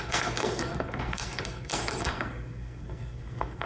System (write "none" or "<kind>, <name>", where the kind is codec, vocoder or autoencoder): codec, SNAC